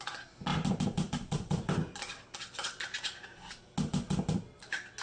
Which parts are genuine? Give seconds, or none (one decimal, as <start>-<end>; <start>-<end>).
0.0-0.5; 3.5-3.9; 4.4-5.0